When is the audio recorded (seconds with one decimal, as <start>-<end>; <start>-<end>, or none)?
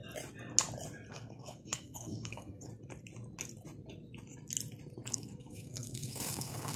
0.0-1.1; 2.7-5.1